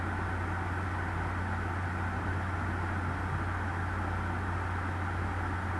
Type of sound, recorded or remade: recorded